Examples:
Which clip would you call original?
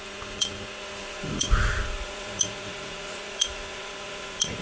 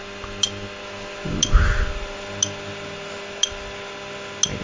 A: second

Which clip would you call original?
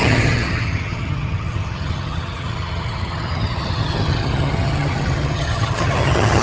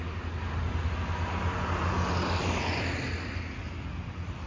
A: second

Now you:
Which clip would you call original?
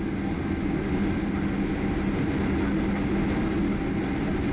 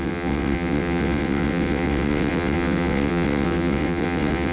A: first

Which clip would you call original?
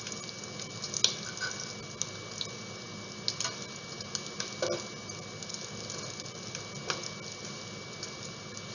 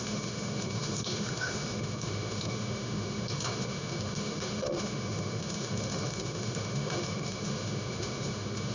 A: first